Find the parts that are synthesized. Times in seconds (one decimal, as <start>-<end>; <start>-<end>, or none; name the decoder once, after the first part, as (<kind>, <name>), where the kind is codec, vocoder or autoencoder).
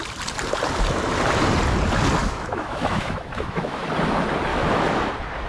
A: 2.2-3.8 (autoencoder, DAC-VAE); 4.5-5.1